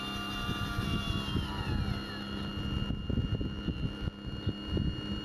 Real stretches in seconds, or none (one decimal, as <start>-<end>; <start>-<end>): 0.0-5.2